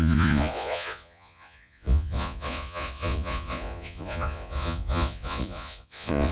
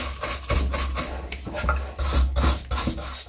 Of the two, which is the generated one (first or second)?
first